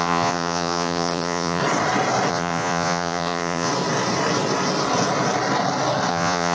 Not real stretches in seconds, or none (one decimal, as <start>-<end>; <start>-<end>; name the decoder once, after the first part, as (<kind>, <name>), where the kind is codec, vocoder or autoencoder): 0.0-1.6 (vocoder, Vocos); 2.3-3.7; 6.1-6.5